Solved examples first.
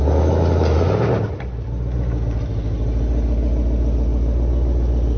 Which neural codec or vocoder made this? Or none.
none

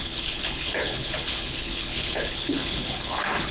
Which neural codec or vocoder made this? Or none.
codec, HILCodec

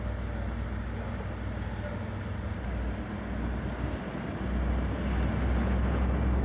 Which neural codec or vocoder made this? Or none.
none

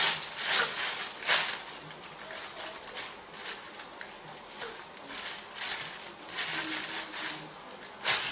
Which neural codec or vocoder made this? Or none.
none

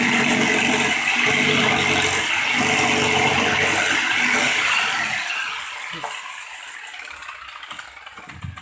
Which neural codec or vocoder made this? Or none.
none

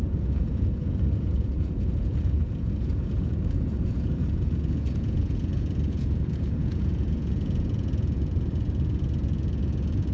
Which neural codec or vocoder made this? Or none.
vocoder, Vocos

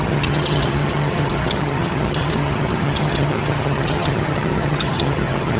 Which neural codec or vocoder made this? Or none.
vocoder, HiFi-GAN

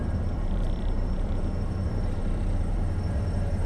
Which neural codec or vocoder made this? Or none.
vocoder, BigVGAN v2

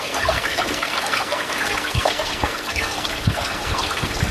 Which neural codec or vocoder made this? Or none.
codec, SNAC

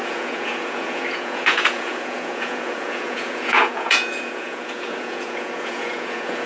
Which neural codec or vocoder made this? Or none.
vocoder, Vocos